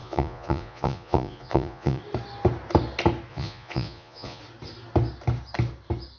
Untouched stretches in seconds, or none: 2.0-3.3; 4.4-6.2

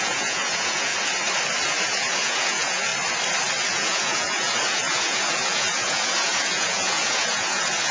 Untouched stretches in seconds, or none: 0.9-1.7; 2.9-3.7

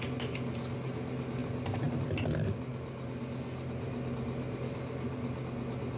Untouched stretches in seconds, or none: 0.0-6.0

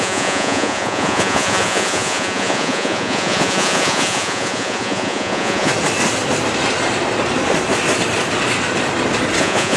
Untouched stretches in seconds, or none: 5.7-9.4

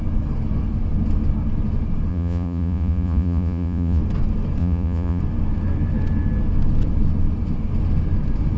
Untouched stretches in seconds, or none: 0.0-2.1; 4.0-4.6; 5.2-8.6

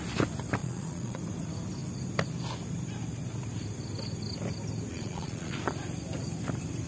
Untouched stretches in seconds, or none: 0.0-0.6; 1.2-4.9; 5.6-6.9